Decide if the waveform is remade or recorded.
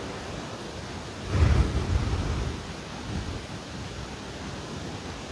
recorded